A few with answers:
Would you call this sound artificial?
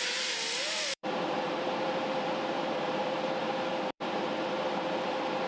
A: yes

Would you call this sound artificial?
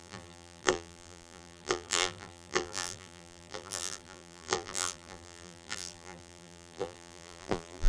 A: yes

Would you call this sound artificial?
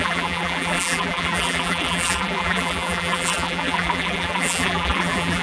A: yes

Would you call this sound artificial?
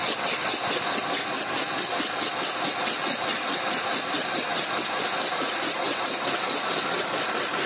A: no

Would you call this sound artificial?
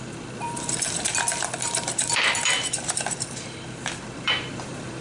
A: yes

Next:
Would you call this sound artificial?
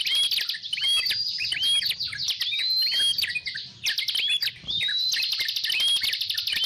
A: no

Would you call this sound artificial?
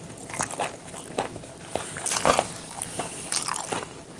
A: yes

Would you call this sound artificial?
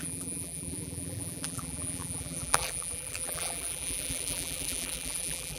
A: yes